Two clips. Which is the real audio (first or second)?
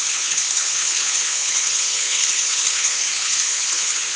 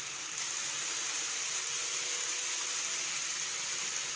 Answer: second